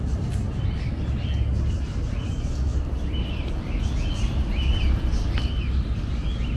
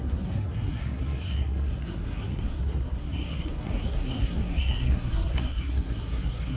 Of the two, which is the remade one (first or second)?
second